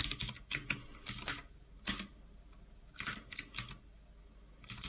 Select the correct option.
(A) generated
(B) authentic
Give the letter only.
B